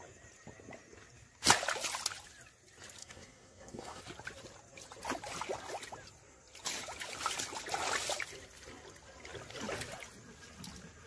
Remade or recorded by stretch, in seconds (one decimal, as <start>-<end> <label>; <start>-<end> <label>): 0.0-3.0 recorded; 3.0-4.0 remade; 4.0-11.1 recorded